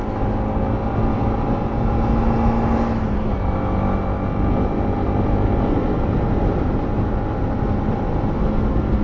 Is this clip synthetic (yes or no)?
no